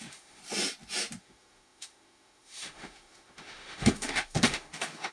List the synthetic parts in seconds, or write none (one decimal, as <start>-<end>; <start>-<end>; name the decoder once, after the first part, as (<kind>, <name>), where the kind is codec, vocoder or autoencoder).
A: 0.0-0.4 (autoencoder, DAC-VAE); 1.2-5.1